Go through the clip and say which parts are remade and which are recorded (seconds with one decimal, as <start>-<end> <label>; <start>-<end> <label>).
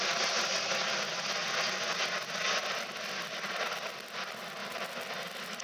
0.0-5.6 recorded